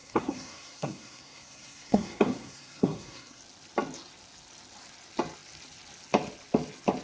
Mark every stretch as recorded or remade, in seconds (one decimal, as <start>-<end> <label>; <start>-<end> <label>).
0.0-3.4 remade; 3.4-7.0 recorded